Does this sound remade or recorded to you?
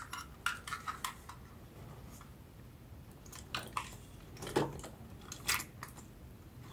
recorded